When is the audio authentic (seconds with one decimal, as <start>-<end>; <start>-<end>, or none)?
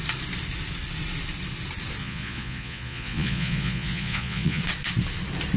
0.0-2.0; 4.6-5.6